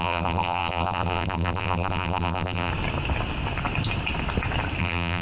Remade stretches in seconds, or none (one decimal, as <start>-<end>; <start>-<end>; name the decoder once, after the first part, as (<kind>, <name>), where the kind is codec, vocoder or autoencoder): 0.0-2.7 (vocoder, BigVGAN v2); 4.8-5.2